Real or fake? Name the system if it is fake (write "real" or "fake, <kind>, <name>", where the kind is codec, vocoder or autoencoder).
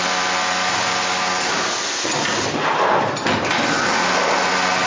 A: real